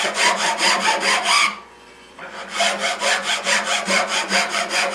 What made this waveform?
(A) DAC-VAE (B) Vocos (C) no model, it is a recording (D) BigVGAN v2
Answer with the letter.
B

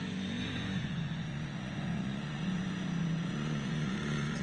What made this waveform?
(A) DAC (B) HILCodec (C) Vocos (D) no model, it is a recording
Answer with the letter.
C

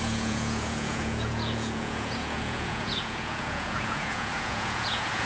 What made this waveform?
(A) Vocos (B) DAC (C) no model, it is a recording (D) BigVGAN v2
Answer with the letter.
A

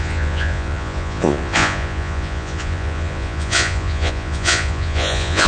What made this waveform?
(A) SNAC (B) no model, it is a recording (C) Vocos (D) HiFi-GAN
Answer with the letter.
C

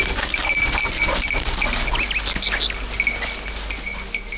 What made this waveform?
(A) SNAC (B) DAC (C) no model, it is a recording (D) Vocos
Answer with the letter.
C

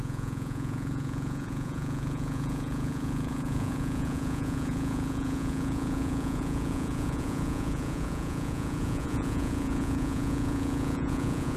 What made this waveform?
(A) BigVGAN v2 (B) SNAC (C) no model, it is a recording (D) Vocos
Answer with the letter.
D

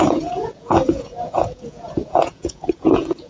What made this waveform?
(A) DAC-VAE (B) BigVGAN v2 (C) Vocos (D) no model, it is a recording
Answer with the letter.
C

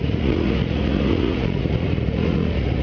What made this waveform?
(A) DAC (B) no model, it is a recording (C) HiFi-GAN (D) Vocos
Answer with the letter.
D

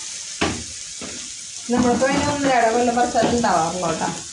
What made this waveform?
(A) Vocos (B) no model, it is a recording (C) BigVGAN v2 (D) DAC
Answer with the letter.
B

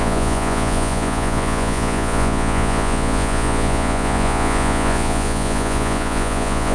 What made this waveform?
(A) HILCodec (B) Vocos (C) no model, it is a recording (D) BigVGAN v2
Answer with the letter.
B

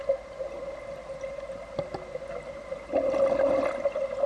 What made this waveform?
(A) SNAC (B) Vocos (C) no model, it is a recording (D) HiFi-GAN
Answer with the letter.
C